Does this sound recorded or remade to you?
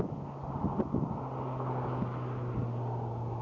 recorded